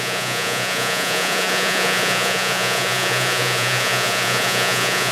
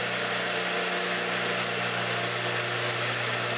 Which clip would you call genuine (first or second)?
second